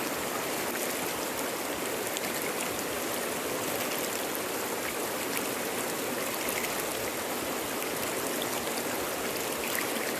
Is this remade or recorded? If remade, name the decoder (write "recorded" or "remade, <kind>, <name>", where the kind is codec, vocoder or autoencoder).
recorded